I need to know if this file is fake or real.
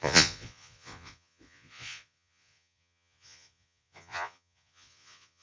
fake